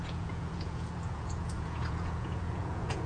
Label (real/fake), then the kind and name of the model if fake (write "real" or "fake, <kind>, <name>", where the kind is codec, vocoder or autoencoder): fake, vocoder, Vocos